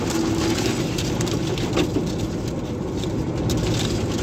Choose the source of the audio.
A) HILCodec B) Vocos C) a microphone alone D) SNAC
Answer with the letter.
C